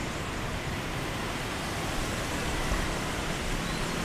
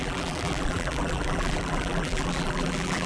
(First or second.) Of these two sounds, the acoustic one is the first